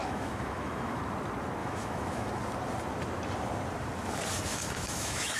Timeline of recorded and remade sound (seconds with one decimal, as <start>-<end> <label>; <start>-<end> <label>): 0.0-1.0 remade; 1.0-1.6 recorded; 1.6-2.3 remade; 2.3-4.5 recorded; 4.5-5.4 remade